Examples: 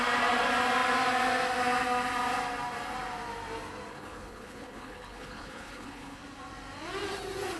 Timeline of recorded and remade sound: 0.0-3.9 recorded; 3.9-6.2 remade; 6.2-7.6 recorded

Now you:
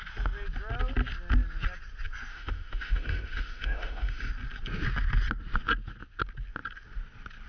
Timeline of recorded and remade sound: 0.0-2.3 recorded; 2.3-4.3 remade; 4.3-7.5 recorded

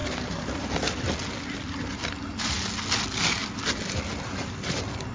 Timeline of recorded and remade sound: 0.0-5.1 recorded